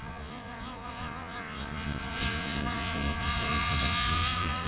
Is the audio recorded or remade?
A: remade